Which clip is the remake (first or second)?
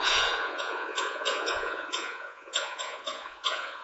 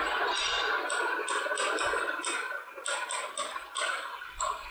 first